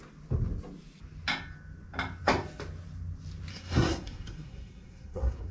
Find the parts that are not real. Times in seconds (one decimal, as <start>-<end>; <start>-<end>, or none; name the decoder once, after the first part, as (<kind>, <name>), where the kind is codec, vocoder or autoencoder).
3.5-5.5 (codec, SNAC)